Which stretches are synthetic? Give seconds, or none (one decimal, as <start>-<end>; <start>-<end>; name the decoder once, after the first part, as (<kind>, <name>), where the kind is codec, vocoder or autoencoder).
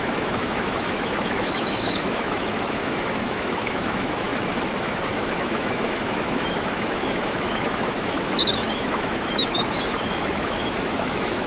0.0-4.3 (autoencoder, DAC-VAE); 4.8-11.5